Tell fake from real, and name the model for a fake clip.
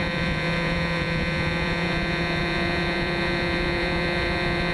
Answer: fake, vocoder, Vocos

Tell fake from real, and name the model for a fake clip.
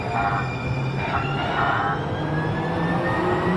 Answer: real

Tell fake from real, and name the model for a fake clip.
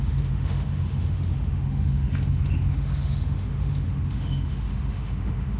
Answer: fake, autoencoder, DAC-VAE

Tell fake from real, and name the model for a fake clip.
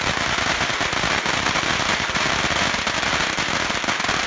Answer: real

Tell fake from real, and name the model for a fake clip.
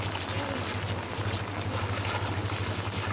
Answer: real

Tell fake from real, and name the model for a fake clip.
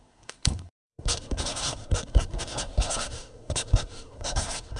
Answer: fake, codec, SNAC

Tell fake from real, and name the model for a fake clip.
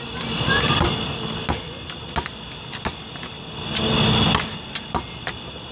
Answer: real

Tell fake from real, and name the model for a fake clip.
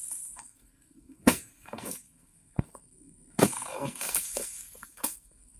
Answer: fake, codec, SNAC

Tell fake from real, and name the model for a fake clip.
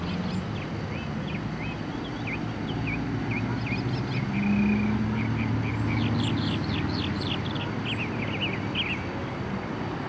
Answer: real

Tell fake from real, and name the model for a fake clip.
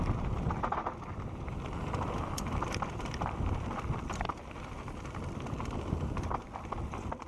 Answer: fake, vocoder, BigVGAN v2